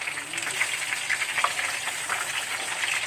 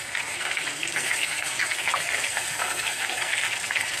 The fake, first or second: second